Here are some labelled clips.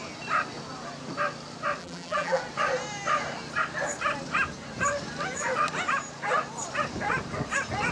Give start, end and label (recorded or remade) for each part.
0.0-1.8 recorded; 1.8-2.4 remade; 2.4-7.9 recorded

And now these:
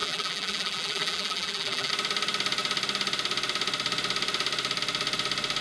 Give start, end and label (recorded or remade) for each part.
0.0-1.9 remade; 1.9-5.6 recorded

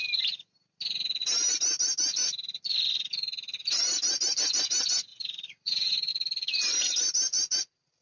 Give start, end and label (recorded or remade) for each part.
0.0-5.1 recorded; 5.1-6.1 remade; 6.1-8.0 recorded

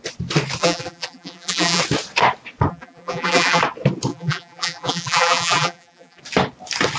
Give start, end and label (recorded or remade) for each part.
0.0-0.6 recorded; 0.6-1.8 remade; 1.8-2.7 recorded; 2.7-3.6 remade; 3.6-4.1 recorded; 4.1-6.2 remade; 6.2-7.0 recorded

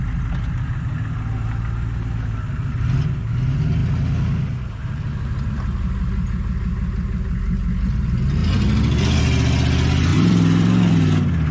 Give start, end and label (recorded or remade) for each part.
0.0-8.4 recorded; 8.4-9.2 remade; 9.2-10.1 recorded; 10.1-11.5 remade

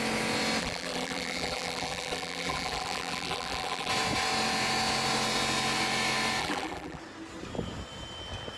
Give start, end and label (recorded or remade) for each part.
0.0-0.6 recorded; 0.6-3.9 remade; 3.9-6.4 recorded; 6.4-7.0 remade; 7.0-8.6 recorded

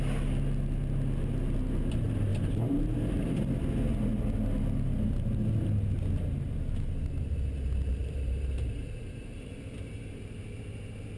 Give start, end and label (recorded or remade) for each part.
0.0-2.3 recorded; 2.3-3.5 remade; 3.5-8.0 recorded; 8.0-9.9 remade; 9.9-11.2 recorded

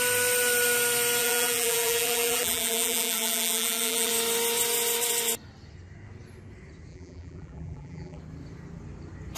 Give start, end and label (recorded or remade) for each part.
0.0-1.2 recorded; 1.2-4.1 remade; 4.1-6.9 recorded; 6.9-8.2 remade; 8.2-9.4 recorded